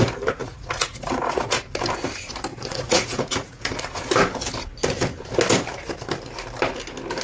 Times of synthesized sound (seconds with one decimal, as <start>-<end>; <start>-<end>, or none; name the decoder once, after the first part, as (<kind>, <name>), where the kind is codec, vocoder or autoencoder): 0.4-1.6 (vocoder, Vocos); 2.5-4.1